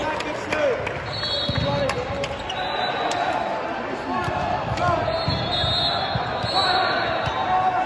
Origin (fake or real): real